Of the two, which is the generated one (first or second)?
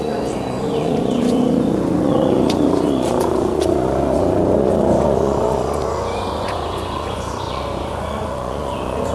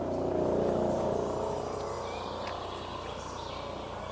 first